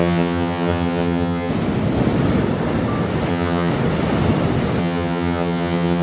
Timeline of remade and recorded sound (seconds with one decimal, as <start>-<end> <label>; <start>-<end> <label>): 0.0-1.5 remade; 1.5-3.3 recorded; 3.3-3.7 remade; 3.7-4.8 recorded; 4.8-6.0 remade